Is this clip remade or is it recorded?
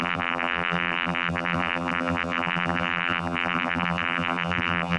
remade